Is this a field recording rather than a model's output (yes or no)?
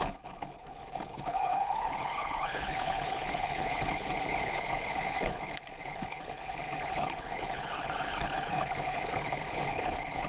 no